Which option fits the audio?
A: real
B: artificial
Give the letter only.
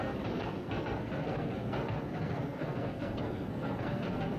B